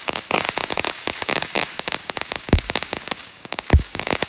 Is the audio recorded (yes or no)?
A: no